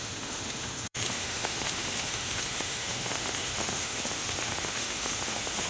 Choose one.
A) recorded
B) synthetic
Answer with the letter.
B